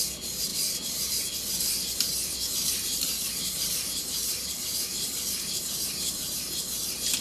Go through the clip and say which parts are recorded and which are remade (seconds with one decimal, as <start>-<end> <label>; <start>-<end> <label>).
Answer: 0.0-0.5 recorded; 0.5-1.2 remade; 1.2-2.7 recorded; 2.7-6.6 remade; 6.6-7.2 recorded